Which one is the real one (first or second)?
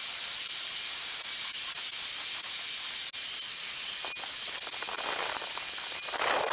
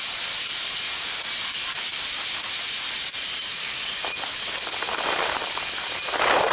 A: first